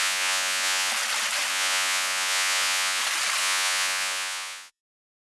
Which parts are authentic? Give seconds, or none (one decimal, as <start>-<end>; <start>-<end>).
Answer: 0.9-1.5; 3.0-3.4; 4.8-5.2